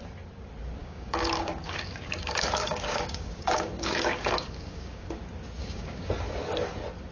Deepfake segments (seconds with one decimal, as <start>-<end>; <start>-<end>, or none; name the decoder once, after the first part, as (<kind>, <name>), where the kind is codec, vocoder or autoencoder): 0.8-5.1 (codec, DAC); 5.6-6.1